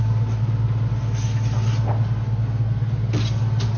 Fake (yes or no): no